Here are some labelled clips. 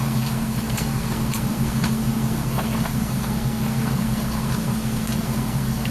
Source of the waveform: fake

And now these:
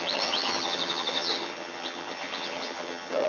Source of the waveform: fake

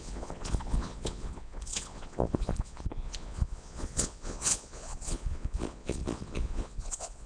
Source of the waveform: fake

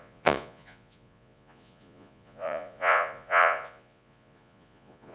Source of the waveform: fake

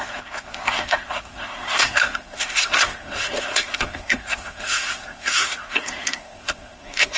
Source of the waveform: fake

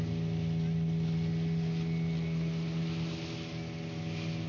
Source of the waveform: real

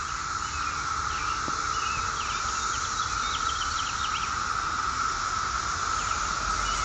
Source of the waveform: real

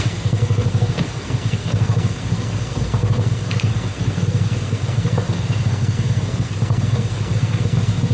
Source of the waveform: fake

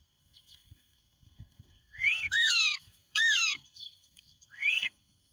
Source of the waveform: fake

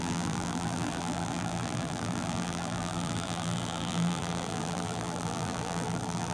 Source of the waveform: fake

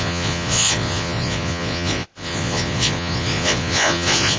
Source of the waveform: fake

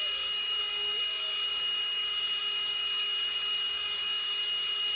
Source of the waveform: fake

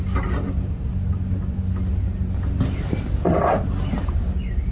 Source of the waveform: real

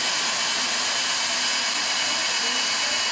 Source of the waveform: real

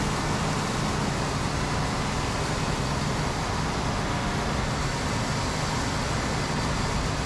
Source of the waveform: real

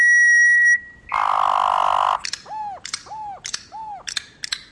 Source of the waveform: real